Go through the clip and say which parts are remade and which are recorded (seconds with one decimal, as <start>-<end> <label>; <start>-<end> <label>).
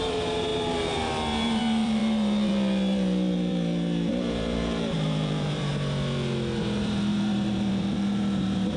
0.0-5.7 remade; 5.7-6.6 recorded; 6.6-8.8 remade